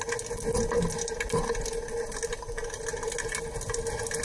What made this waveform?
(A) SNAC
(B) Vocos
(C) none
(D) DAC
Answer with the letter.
C